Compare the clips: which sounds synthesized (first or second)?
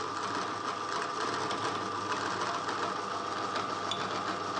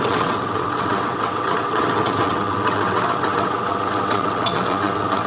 second